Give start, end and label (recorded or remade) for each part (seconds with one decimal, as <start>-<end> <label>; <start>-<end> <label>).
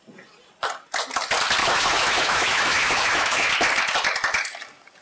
0.0-1.6 recorded; 1.6-3.5 remade; 3.5-5.0 recorded